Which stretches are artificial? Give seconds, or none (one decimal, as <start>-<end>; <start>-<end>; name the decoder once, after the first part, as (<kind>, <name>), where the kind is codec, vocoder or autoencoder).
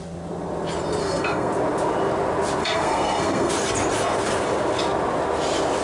1.0-1.5 (codec, SNAC); 2.6-3.5